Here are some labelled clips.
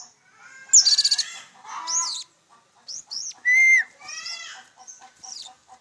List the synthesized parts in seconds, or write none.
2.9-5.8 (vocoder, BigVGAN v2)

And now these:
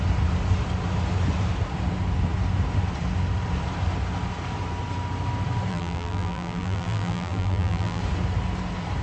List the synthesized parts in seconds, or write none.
5.7-8.0 (vocoder, BigVGAN v2)

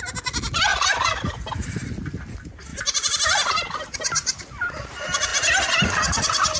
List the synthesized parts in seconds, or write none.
0.7-1.5 (vocoder, BigVGAN v2); 2.7-4.8

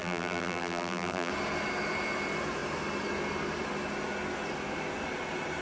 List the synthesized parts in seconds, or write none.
0.0-1.3 (vocoder, BigVGAN v2)

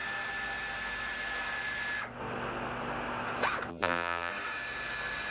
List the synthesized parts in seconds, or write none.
3.7-4.3 (vocoder, BigVGAN v2)

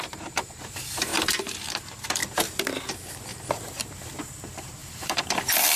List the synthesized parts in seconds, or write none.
0.0-1.1 (vocoder, BigVGAN v2); 1.7-2.2; 2.9-5.8